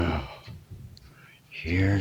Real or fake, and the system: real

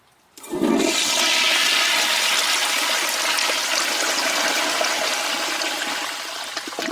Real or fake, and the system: real